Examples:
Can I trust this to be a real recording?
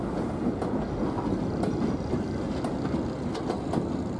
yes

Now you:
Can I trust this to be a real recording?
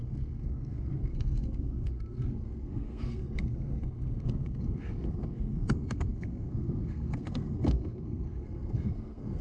no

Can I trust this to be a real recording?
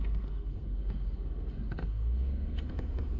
no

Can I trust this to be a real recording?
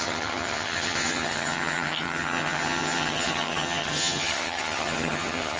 no